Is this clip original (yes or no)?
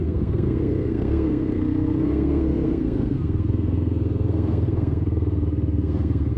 no